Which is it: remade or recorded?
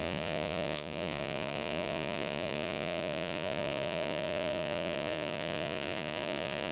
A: remade